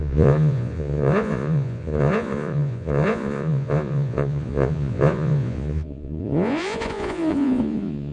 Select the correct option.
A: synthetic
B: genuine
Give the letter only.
A